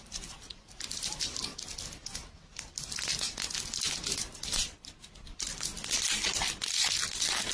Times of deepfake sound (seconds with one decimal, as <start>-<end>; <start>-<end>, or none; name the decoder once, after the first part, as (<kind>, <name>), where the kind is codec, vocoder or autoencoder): 0.0-1.5 (vocoder, BigVGAN v2); 4.8-7.5